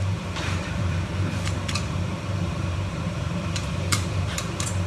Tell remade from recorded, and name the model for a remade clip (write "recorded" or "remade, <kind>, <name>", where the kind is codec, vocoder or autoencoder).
remade, vocoder, BigVGAN v2